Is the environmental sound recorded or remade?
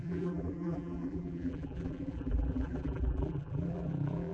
remade